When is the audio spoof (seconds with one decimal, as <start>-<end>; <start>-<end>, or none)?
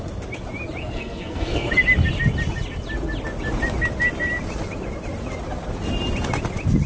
0.8-1.7